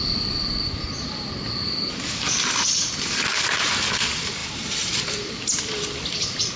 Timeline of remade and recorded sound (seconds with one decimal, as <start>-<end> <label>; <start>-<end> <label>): 0.0-4.4 recorded; 4.4-5.2 remade; 5.2-6.6 recorded